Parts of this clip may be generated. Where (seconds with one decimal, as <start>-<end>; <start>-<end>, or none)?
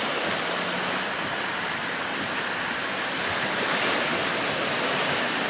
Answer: none